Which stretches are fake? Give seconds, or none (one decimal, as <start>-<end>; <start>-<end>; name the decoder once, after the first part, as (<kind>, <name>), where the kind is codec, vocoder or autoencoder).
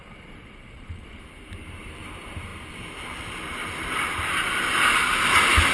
0.0-1.2 (vocoder, Vocos)